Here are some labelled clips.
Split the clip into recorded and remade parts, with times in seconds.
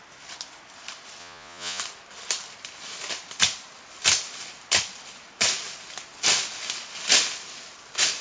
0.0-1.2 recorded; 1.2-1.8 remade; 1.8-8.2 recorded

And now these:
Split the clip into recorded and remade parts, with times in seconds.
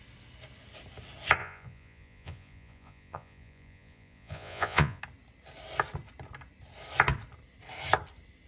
0.0-1.4 recorded; 1.4-5.0 remade; 5.0-8.5 recorded